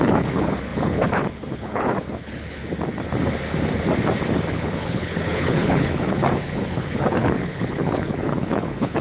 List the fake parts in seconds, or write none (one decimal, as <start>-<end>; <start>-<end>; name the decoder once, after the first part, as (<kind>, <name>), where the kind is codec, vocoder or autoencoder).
0.0-2.6 (codec, HILCodec); 4.5-9.0